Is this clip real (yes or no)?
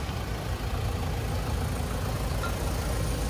yes